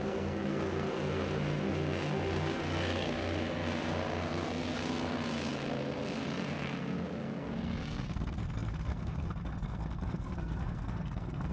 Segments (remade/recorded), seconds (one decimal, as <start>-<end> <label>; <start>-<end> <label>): 0.0-11.5 remade

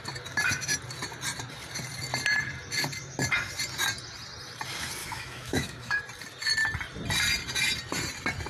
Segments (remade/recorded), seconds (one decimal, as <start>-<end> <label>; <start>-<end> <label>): 0.0-5.0 recorded; 5.0-6.0 remade; 6.0-8.5 recorded

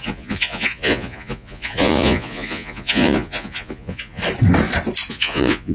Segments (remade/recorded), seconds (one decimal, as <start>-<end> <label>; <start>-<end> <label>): 0.0-4.2 remade; 4.2-5.1 recorded; 5.1-5.7 remade

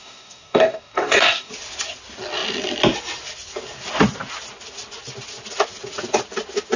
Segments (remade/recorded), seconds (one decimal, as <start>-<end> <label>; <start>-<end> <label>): 0.0-1.5 remade; 1.5-6.8 recorded

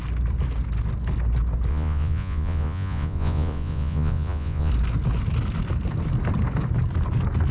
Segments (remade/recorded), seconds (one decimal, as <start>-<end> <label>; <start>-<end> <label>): 0.0-1.7 recorded; 1.7-4.7 remade; 4.7-7.5 recorded